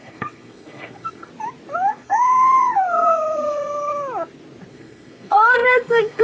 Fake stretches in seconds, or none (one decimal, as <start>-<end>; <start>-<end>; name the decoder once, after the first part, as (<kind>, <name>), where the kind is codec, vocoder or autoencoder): 0.0-1.3 (codec, SNAC); 1.9-3.9; 4.7-6.2